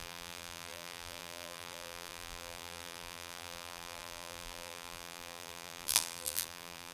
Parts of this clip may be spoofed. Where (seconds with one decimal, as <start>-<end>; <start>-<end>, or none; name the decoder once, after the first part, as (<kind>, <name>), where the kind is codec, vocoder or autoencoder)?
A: 0.0-6.9 (vocoder, BigVGAN v2)